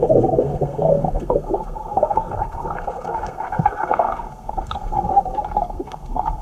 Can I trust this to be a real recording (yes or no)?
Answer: no